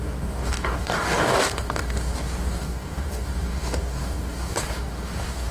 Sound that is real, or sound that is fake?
fake